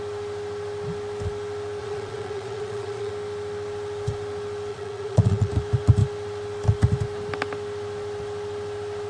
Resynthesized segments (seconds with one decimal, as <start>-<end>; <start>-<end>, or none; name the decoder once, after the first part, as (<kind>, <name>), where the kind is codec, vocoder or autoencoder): 1.8-3.1 (vocoder, Vocos); 4.7-5.5